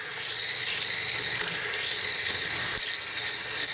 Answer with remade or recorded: recorded